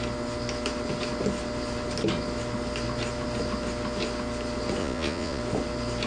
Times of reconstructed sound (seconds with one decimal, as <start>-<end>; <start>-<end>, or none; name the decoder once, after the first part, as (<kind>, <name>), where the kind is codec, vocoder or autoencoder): 4.8-5.4 (vocoder, Vocos)